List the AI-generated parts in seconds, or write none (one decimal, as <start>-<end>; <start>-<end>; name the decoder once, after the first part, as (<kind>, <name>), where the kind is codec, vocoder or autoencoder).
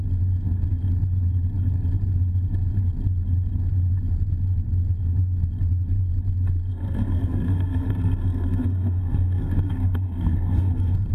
6.7-11.1 (codec, SNAC)